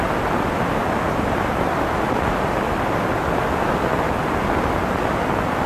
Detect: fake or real real